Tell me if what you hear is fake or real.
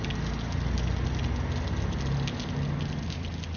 real